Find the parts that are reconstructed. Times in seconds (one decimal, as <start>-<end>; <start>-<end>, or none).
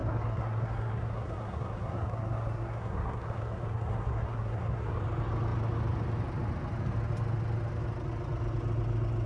0.0-5.0